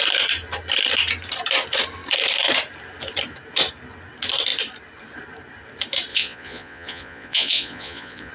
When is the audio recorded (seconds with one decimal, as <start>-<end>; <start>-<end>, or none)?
0.0-6.1